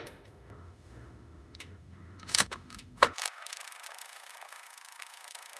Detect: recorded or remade remade